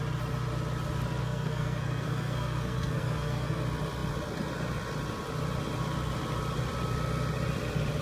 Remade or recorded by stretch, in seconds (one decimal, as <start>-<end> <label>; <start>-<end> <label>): 0.0-1.2 recorded; 1.2-3.6 remade; 3.6-8.0 recorded